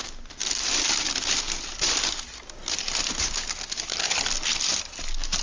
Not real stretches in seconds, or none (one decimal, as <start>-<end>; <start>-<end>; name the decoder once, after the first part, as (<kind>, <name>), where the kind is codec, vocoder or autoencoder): none